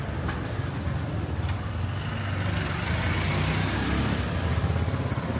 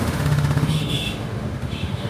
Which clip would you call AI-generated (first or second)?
second